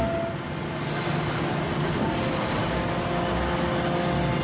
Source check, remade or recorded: recorded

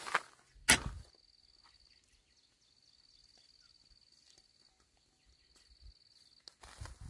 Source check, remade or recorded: recorded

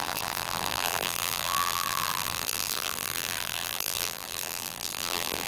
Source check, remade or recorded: remade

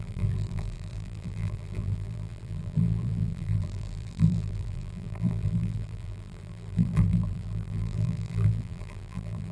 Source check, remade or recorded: remade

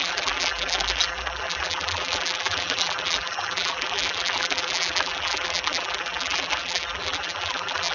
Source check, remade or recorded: remade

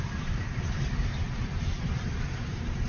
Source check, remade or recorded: remade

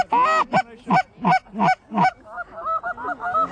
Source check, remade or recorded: recorded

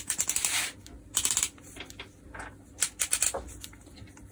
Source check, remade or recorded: remade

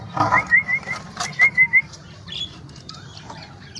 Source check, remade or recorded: remade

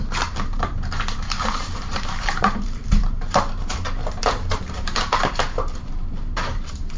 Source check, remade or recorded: remade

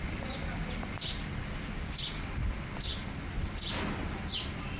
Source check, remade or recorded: recorded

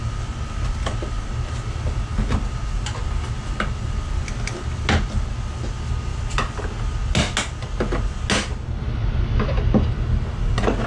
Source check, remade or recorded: recorded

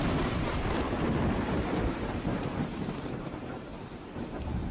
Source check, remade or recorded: remade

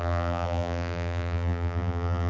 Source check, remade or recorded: remade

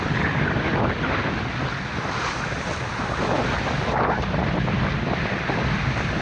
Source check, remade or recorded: recorded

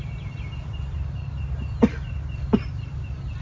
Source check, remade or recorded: recorded